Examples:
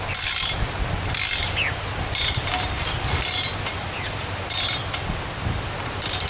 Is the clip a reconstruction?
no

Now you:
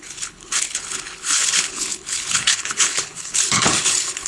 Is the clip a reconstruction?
yes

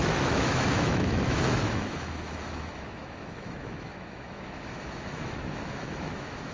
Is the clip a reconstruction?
yes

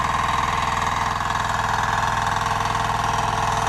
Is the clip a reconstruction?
no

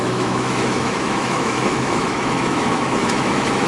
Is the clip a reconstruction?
yes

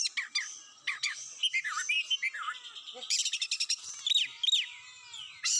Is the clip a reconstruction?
no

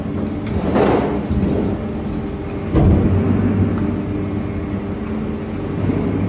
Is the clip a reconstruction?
no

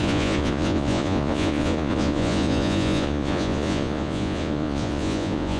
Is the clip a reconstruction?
yes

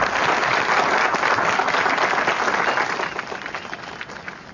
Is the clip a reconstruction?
no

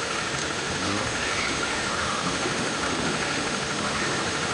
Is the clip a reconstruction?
yes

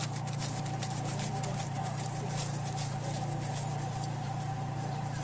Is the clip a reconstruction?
yes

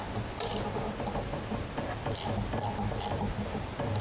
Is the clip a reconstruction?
no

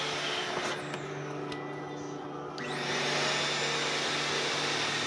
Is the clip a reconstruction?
no